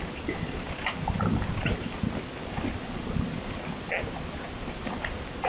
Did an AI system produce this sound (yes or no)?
no